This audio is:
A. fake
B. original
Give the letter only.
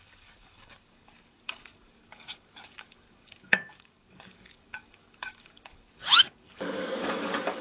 A